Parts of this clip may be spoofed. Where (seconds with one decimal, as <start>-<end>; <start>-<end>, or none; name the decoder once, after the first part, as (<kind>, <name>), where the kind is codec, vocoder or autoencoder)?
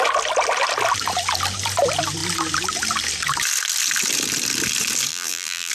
5.1-5.7 (vocoder, BigVGAN v2)